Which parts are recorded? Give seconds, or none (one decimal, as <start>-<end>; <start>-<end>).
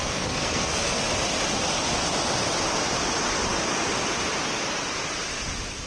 1.0-5.9